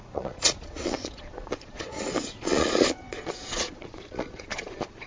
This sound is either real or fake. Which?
fake